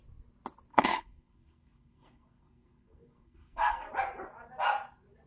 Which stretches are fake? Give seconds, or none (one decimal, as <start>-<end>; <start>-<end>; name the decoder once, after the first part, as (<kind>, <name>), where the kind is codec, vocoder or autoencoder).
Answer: 0.7-3.9 (codec, SNAC)